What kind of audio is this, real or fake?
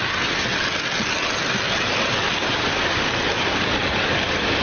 real